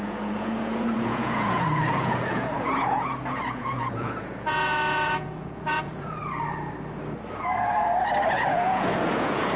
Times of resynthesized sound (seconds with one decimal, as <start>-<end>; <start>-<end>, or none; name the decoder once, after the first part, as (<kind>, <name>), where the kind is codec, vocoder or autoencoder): 0.0-6.2 (vocoder, Vocos); 8.3-9.6